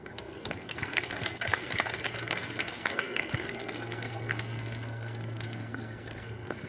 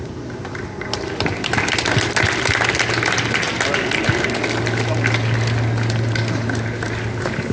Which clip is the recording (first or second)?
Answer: second